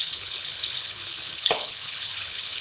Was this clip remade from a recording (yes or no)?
yes